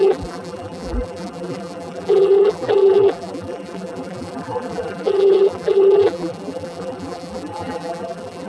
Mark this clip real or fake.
fake